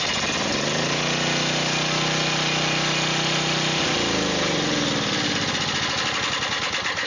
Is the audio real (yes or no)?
yes